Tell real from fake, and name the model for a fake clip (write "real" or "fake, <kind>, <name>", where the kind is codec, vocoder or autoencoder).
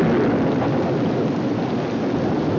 real